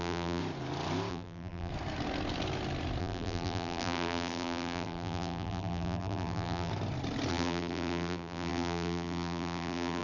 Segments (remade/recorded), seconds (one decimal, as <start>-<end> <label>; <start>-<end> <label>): 0.0-0.4 remade; 0.4-1.1 recorded; 1.1-1.7 remade; 1.7-3.0 recorded; 3.0-6.7 remade; 6.7-7.3 recorded; 7.3-10.0 remade